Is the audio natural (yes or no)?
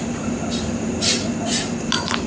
yes